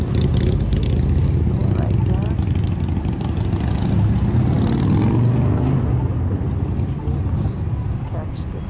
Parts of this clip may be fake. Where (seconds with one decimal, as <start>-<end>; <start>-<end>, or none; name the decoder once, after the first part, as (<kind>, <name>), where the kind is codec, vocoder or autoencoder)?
none